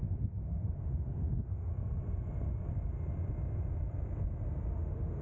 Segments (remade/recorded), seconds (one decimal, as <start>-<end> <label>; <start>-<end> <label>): 0.0-1.7 remade; 1.7-4.7 recorded; 4.7-5.2 remade